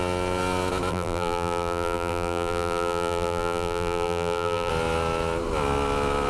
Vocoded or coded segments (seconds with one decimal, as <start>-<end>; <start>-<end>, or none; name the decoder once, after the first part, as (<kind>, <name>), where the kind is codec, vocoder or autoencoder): 0.9-4.7 (vocoder, BigVGAN v2)